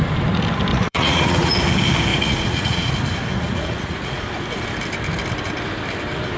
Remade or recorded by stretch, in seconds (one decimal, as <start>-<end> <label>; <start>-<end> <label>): 0.0-0.7 recorded; 0.7-1.5 remade; 1.5-2.1 recorded; 2.1-2.9 remade; 2.9-3.3 recorded; 3.3-4.2 remade; 4.2-6.4 recorded